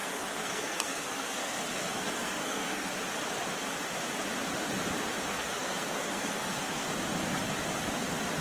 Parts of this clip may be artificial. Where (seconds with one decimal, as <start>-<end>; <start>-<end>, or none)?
0.0-2.9; 5.3-6.9